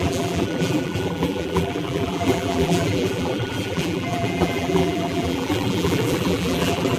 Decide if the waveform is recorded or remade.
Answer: remade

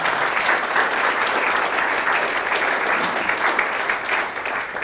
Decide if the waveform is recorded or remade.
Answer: remade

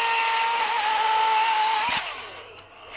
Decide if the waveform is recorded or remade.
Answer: recorded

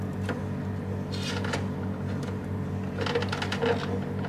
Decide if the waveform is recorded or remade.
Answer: recorded